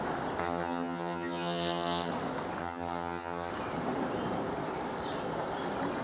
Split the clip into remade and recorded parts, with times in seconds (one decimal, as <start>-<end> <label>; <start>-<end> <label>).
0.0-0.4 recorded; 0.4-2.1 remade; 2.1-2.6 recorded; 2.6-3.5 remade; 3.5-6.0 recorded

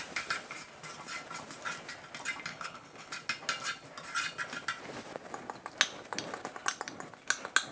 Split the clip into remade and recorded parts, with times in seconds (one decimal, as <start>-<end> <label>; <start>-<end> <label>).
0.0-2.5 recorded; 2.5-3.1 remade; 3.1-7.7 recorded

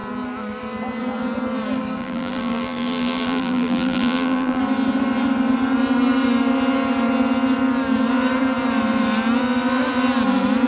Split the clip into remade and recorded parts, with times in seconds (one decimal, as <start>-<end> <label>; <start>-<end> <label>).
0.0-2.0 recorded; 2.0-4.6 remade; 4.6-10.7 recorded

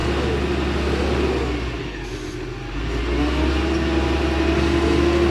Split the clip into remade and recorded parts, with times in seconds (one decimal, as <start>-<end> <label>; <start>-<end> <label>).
0.0-5.3 recorded